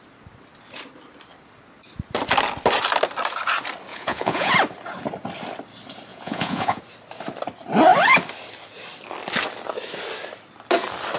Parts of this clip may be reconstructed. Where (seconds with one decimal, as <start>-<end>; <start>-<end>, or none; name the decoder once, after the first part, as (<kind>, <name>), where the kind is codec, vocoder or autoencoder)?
3.9-4.5 (vocoder, Vocos); 6.1-6.8